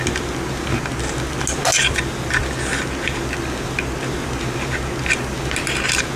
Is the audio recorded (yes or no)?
yes